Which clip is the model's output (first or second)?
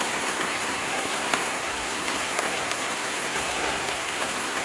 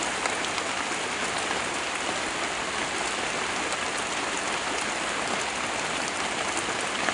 first